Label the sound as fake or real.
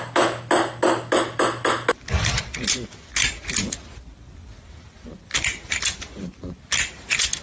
real